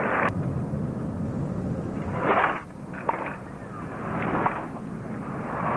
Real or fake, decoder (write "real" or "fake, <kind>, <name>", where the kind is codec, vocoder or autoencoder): real